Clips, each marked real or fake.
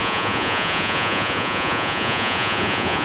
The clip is fake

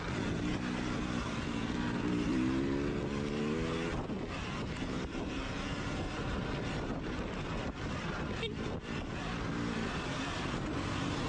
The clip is real